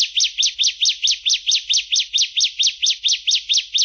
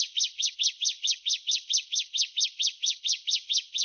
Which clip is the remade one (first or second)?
second